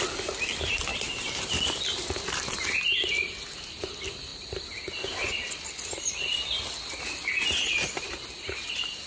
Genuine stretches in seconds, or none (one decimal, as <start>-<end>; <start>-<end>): 0.0-9.1

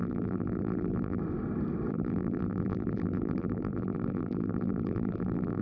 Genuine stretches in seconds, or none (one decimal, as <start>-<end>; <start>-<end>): 1.2-1.9

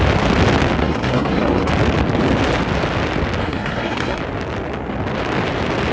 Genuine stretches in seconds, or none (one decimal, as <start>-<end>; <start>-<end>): 0.0-0.8; 1.7-3.4; 4.2-5.9

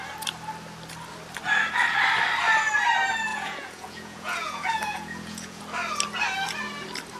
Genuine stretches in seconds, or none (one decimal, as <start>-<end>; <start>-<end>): 0.0-3.3; 5.6-7.2

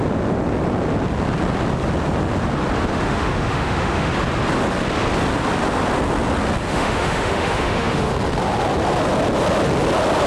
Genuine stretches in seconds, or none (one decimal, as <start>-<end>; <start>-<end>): 0.0-2.9; 4.1-6.7; 8.1-10.3